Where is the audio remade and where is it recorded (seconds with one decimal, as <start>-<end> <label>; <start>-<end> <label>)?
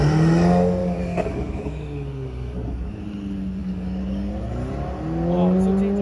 0.0-0.8 recorded; 0.8-3.0 remade; 3.0-3.6 recorded; 3.6-4.3 remade; 4.3-6.0 recorded